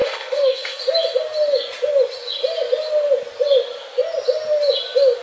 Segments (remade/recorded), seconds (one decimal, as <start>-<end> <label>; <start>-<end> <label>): 0.0-0.8 remade; 0.8-5.2 recorded